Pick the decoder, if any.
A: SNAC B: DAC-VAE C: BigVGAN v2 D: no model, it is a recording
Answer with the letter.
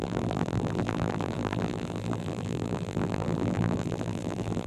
C